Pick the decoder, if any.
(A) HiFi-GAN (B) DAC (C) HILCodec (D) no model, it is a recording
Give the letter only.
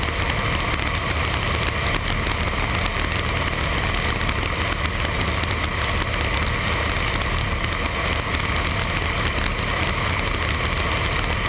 D